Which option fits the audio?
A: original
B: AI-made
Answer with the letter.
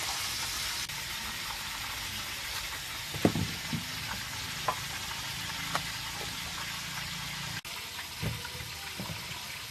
A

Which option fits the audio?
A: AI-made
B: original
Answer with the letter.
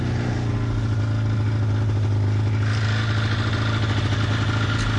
B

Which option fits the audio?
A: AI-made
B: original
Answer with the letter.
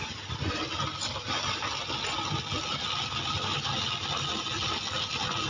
B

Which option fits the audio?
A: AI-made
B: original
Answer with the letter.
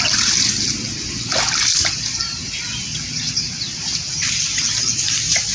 B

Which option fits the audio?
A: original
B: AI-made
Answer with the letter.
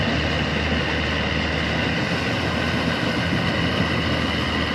A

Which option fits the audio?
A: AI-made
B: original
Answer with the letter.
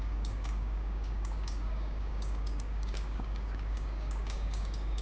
A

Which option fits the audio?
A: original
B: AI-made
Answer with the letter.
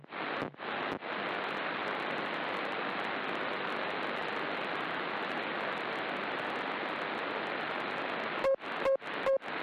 A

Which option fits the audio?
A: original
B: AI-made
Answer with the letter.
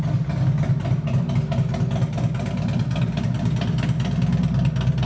A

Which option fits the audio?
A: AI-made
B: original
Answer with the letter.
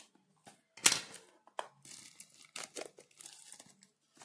B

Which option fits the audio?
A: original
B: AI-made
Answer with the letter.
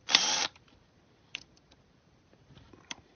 B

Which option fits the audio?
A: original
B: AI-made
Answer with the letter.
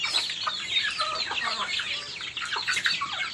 A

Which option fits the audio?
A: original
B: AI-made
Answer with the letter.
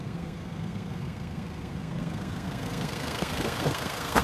B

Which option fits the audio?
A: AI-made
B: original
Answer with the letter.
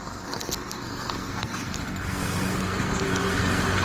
A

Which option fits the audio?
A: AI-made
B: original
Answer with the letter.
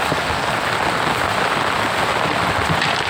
B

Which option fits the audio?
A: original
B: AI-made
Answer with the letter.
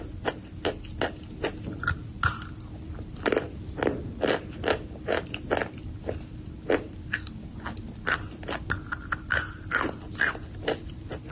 A